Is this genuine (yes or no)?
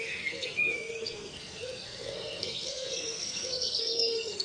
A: no